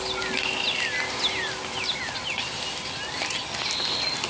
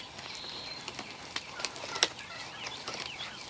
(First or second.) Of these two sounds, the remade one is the second